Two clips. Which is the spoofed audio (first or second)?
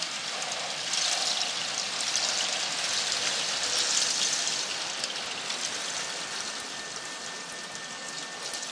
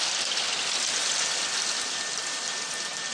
second